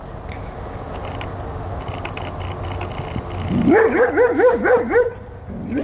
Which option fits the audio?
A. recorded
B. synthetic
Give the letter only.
A